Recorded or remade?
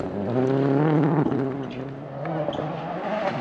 recorded